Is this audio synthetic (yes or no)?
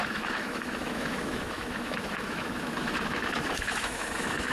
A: yes